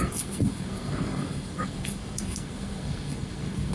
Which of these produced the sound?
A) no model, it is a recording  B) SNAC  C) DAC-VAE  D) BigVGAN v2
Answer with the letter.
B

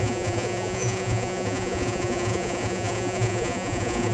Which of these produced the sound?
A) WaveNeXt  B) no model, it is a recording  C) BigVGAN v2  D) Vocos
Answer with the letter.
D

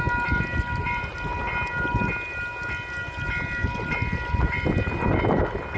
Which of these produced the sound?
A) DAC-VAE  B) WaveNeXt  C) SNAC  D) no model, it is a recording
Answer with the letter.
D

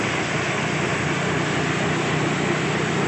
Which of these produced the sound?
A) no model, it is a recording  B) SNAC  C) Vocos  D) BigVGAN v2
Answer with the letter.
A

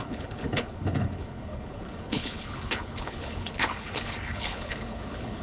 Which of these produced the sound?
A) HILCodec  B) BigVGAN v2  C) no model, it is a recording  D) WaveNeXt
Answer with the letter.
A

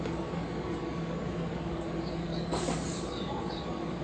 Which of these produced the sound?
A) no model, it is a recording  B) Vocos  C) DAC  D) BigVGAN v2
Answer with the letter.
C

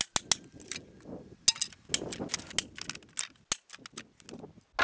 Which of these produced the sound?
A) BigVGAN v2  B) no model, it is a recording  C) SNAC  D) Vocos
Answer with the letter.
B